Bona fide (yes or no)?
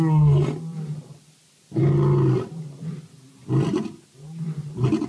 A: yes